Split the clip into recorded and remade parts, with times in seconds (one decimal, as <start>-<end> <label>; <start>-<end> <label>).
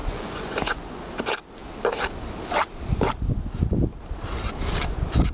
0.0-1.1 remade; 1.1-5.3 recorded